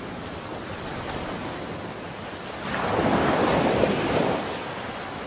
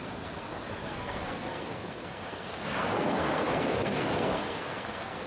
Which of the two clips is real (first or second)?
first